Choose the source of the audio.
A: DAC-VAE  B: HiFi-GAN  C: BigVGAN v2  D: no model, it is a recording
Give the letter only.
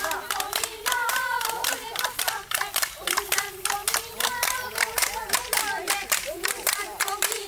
C